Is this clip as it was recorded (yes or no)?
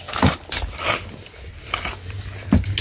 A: yes